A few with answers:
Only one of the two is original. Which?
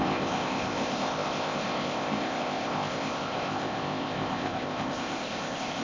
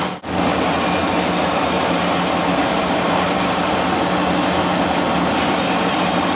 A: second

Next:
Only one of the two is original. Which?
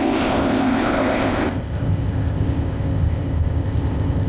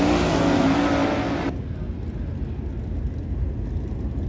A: second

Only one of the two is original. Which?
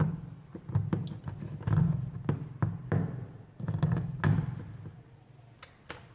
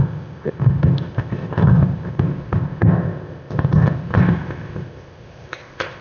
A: first